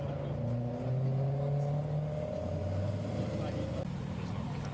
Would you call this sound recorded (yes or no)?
yes